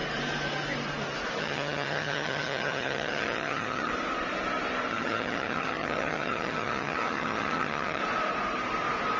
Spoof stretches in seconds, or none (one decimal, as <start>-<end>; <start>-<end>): 1.4-3.9; 4.9-8.0